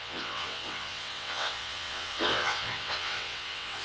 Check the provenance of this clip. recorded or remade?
remade